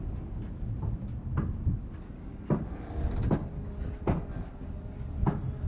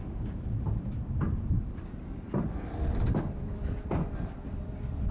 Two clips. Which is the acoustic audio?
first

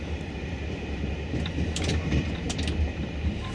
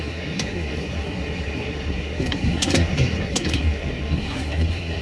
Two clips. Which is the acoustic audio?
first